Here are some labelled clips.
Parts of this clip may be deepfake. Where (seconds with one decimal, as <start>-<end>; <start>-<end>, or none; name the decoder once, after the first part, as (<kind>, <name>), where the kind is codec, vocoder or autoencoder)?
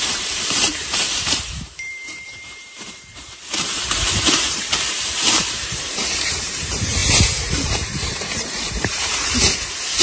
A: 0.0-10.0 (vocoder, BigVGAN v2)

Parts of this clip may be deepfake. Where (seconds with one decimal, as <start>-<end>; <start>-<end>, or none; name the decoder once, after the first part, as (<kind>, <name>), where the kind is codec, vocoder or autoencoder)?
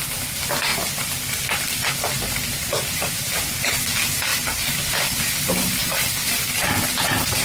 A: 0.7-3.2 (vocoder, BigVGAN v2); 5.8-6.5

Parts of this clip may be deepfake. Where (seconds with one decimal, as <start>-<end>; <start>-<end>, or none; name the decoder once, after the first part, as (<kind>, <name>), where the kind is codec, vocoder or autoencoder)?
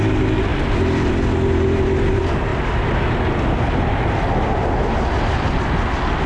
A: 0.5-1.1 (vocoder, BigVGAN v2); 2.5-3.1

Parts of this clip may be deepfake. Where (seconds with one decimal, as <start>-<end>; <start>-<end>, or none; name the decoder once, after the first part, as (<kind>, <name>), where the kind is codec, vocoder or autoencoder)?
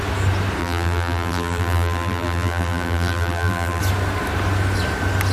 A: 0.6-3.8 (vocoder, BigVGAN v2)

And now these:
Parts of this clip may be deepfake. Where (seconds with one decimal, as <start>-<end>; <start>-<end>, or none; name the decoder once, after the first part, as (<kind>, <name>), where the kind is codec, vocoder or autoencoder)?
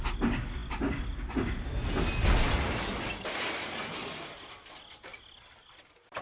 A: 5.1-6.2 (vocoder, BigVGAN v2)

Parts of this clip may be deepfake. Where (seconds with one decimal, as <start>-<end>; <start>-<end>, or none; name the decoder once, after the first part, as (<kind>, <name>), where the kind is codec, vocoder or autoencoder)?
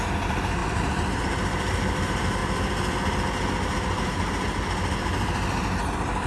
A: 0.0-2.4 (vocoder, BigVGAN v2)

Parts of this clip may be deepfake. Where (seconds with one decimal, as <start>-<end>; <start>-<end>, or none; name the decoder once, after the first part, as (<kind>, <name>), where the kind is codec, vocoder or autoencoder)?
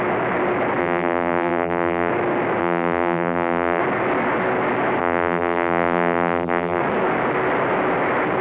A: 0.8-2.1 (vocoder, BigVGAN v2); 2.6-3.8; 5.0-6.8